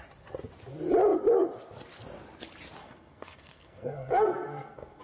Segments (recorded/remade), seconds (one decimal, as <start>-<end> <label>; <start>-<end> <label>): 0.0-2.8 recorded; 2.8-5.0 remade